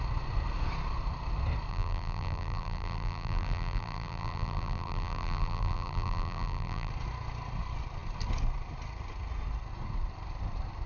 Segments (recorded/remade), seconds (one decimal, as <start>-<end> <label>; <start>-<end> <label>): 0.0-1.7 recorded; 1.7-6.9 remade; 6.9-10.9 recorded